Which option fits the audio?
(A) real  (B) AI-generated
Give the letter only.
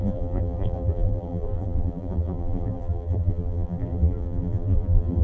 B